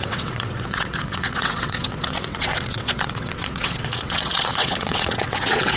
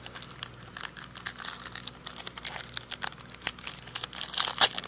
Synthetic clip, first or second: first